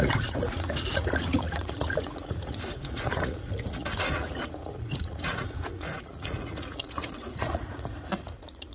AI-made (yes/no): yes